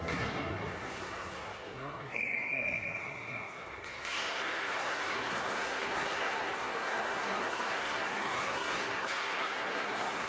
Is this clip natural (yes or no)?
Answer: no